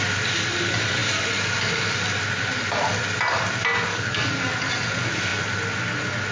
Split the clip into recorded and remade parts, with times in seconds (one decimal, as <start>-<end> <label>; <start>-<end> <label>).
0.0-3.9 recorded; 3.9-4.5 remade; 4.5-6.3 recorded